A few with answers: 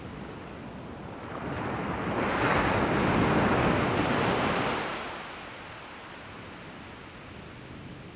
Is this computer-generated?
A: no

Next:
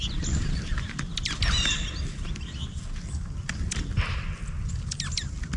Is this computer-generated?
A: no